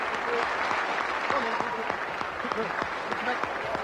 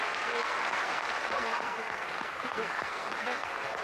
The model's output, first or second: second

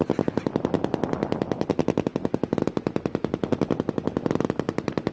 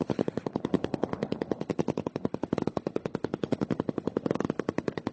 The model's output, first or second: second